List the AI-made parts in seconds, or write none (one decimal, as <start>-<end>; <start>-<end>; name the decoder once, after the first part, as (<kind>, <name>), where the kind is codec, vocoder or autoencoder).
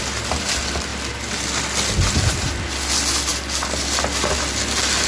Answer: none